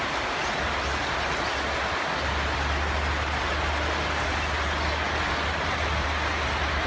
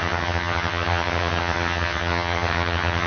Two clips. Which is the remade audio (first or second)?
second